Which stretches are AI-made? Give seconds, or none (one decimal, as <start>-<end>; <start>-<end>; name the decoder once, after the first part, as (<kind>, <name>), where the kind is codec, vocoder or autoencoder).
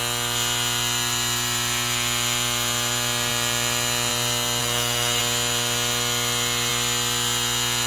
4.6-5.2 (codec, SNAC)